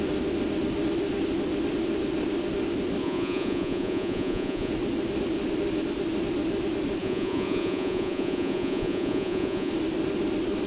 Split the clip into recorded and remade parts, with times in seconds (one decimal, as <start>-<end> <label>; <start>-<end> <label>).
0.0-3.0 recorded; 3.0-4.7 remade; 4.7-7.0 recorded; 7.0-9.7 remade; 9.7-10.7 recorded